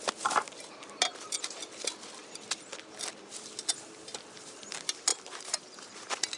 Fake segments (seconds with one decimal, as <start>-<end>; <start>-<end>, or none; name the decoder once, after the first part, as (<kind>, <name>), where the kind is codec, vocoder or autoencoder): none